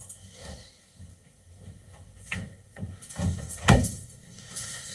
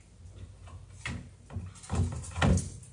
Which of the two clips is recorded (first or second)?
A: second